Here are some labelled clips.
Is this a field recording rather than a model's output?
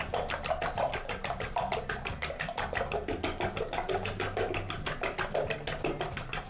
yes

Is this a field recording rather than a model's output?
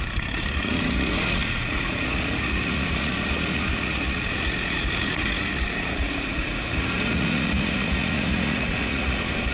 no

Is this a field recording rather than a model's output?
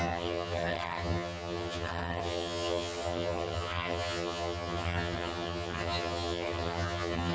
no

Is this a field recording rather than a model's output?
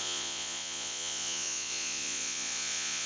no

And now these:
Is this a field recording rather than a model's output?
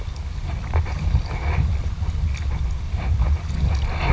yes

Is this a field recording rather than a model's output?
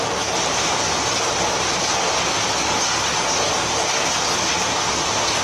yes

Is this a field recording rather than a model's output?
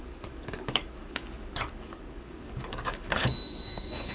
no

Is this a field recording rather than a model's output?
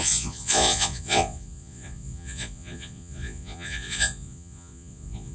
no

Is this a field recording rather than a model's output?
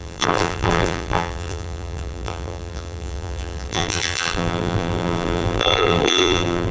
no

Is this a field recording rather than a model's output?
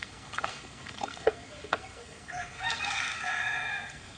no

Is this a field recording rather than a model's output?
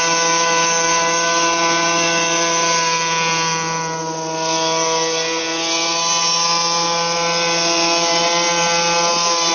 yes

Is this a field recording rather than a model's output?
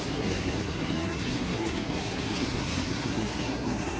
no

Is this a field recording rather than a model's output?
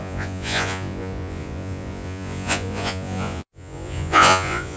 no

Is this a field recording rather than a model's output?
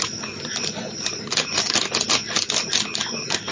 yes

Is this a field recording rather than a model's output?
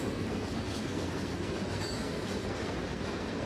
no